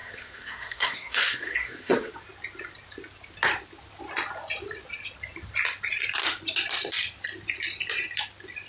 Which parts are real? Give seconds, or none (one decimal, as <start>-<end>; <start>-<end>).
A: 2.1-8.7